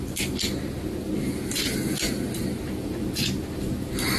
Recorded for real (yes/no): yes